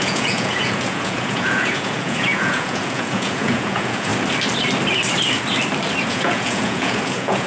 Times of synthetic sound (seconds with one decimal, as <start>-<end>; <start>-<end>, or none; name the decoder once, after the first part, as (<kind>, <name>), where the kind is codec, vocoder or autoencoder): 0.0-4.1 (vocoder, Vocos); 6.1-7.5